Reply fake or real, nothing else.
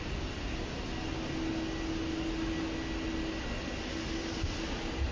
real